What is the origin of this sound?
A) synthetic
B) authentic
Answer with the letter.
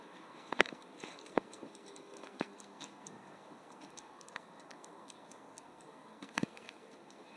A